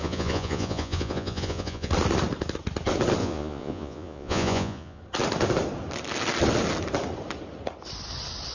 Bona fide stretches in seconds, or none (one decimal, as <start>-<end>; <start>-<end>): 1.9-3.2; 5.0-8.5